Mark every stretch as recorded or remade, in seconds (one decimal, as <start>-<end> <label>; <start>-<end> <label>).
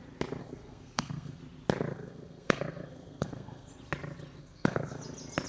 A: 0.0-0.4 recorded; 0.4-1.4 remade; 1.4-1.9 recorded; 1.9-3.7 remade; 3.7-4.4 recorded; 4.4-5.0 remade; 5.0-5.5 recorded